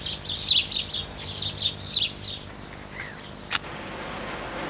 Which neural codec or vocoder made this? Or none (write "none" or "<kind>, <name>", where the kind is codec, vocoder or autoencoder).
none